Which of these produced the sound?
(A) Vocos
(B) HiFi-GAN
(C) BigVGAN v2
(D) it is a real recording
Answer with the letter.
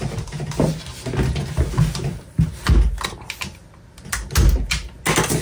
D